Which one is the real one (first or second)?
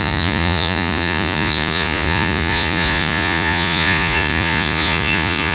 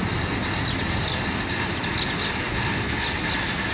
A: second